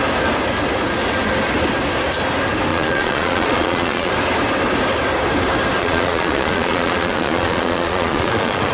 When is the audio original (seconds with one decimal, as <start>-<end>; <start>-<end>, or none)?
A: 0.0-2.7; 4.1-5.8

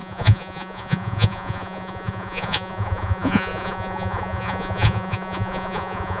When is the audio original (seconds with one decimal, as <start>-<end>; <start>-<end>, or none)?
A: none

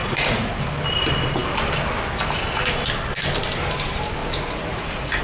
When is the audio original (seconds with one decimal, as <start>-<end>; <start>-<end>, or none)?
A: 0.6-4.2